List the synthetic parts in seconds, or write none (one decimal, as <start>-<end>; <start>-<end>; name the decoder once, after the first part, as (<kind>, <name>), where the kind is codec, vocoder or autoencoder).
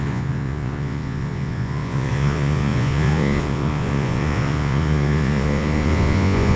0.0-6.6 (vocoder, Vocos)